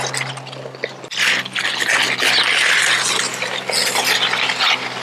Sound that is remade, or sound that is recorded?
recorded